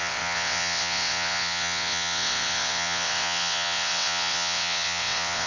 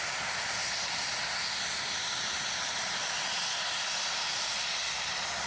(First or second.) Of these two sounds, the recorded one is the second